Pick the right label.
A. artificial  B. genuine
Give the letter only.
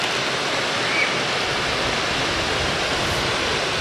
B